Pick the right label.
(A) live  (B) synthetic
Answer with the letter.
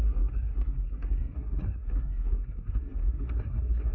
B